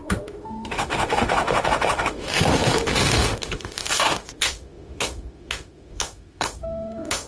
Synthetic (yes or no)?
yes